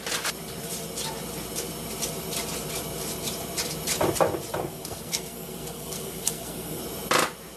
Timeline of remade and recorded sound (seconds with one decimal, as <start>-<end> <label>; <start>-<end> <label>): 0.0-4.6 recorded; 4.6-6.8 remade; 6.8-7.6 recorded